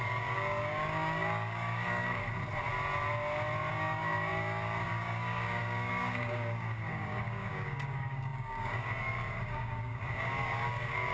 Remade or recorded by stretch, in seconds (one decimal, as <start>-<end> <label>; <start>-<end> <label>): 0.0-2.2 remade; 2.2-3.7 recorded; 3.7-11.1 remade